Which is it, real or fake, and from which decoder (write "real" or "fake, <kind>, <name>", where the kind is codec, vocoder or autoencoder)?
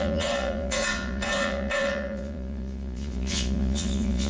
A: fake, vocoder, Vocos